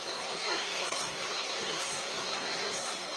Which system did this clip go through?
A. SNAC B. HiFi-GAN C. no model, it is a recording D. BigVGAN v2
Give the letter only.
A